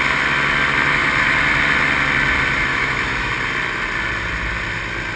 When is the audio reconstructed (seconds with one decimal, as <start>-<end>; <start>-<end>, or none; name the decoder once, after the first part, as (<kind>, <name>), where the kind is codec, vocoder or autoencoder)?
2.7-3.3 (autoencoder, DAC-VAE)